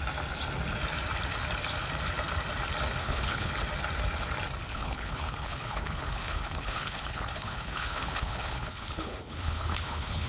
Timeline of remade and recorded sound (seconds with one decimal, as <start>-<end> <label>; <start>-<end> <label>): 0.0-3.0 recorded; 3.0-3.5 remade; 3.5-4.7 recorded; 4.7-10.3 remade